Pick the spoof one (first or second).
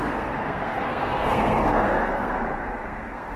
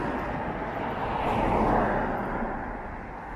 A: first